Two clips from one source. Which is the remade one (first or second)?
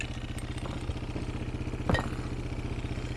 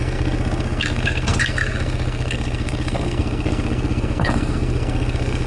second